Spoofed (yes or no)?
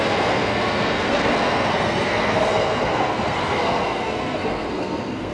yes